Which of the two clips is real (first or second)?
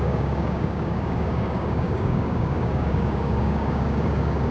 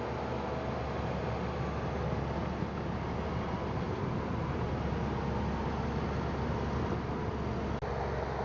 second